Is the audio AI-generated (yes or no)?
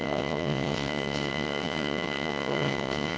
yes